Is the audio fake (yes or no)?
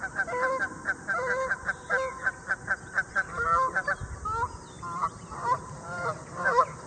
no